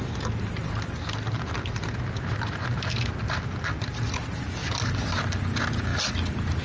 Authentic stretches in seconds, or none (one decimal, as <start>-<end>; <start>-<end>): 0.0-4.6; 5.2-6.6